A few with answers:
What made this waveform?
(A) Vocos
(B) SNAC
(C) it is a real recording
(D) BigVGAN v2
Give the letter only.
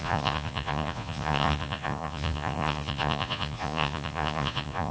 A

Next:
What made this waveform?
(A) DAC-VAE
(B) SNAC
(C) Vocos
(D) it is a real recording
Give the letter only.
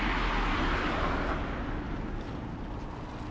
D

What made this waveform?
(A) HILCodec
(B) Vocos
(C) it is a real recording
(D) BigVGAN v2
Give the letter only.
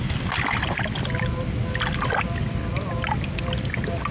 C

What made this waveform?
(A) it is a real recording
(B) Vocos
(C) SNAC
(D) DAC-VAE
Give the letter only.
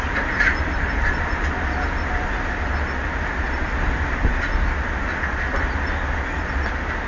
A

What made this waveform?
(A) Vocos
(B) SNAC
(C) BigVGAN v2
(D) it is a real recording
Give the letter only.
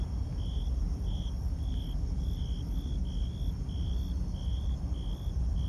D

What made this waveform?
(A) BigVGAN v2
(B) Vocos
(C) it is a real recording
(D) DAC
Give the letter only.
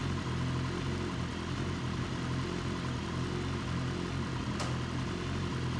C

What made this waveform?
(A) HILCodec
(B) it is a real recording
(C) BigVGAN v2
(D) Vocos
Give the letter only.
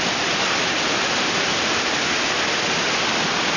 B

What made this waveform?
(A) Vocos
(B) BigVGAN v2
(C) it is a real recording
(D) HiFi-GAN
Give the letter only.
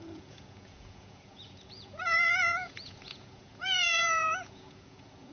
A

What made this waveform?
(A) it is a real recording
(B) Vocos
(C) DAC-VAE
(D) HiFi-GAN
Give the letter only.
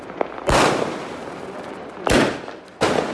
A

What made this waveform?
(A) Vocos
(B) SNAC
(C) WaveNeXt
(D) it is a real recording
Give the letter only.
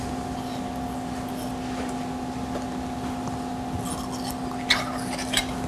D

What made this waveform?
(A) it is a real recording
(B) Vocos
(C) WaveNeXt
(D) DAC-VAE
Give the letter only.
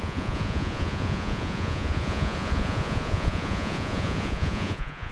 B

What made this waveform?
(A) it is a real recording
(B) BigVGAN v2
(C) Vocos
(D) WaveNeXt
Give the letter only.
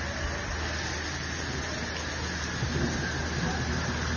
A